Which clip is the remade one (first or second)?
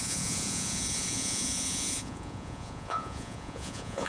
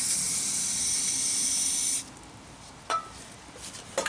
first